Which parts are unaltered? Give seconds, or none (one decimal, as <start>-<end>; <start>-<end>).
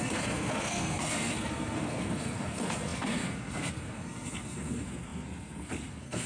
none